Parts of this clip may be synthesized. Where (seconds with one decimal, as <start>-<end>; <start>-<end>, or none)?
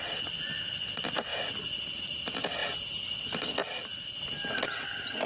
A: none